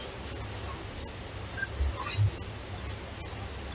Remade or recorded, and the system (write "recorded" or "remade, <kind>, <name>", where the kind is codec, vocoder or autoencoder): recorded